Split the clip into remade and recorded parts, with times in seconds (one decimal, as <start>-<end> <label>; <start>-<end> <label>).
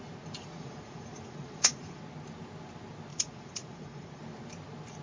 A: 0.0-0.5 recorded; 0.5-2.0 remade; 2.0-3.1 recorded; 3.1-4.2 remade; 4.2-5.0 recorded